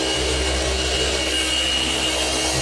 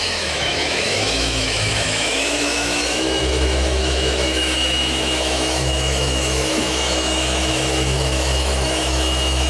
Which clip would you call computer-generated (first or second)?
second